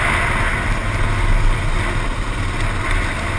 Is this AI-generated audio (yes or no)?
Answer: no